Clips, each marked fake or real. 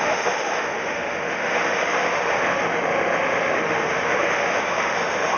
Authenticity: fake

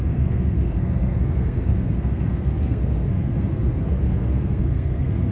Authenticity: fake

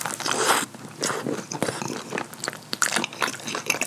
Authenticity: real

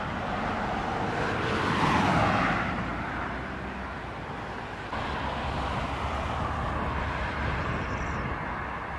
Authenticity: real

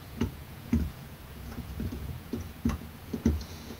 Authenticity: fake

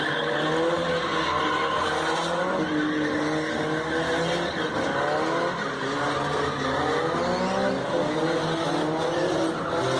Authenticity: real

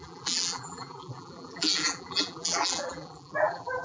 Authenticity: fake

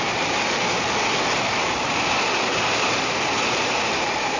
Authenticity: real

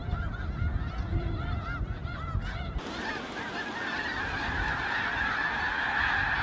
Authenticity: real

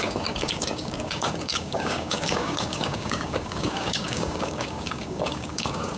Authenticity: fake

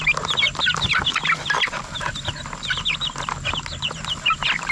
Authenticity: real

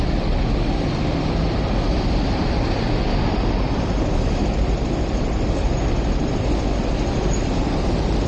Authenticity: real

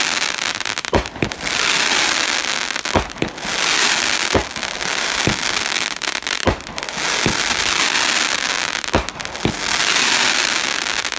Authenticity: real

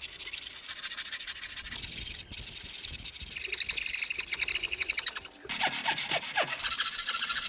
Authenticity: real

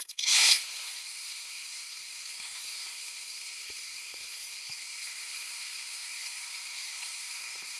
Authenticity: fake